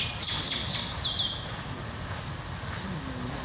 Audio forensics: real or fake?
real